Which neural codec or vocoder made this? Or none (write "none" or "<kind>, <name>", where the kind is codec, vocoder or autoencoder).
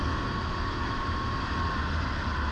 none